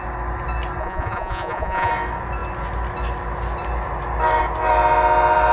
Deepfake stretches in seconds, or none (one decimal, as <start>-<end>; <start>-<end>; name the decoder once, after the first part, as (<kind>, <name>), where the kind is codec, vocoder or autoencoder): 0.8-1.9 (vocoder, Vocos)